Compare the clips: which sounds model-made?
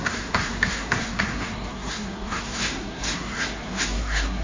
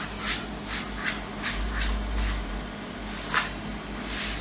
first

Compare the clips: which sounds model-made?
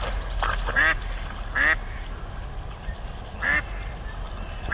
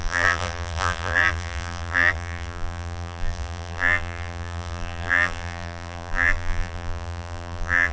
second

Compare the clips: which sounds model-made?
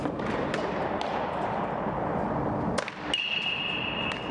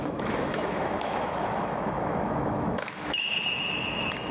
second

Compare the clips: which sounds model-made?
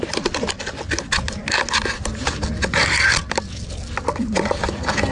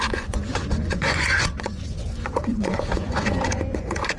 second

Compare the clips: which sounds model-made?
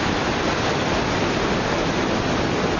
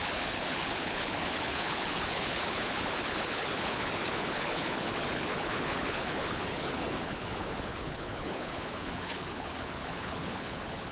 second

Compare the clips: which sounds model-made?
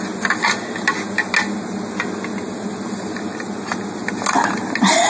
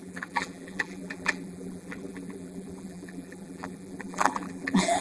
second